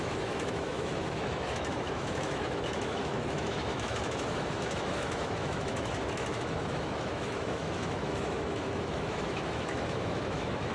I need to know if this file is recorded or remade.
remade